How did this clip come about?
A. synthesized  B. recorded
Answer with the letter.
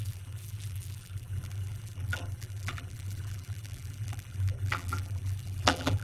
A